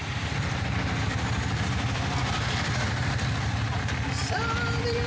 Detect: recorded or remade recorded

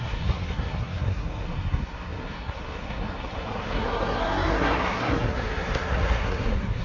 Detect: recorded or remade remade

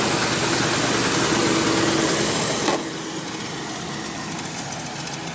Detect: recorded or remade recorded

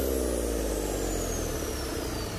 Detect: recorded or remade recorded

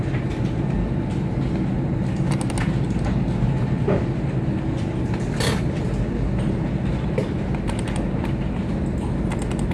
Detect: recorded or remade recorded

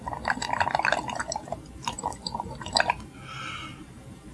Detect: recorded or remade remade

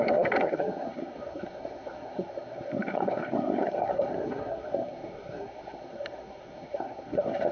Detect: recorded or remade remade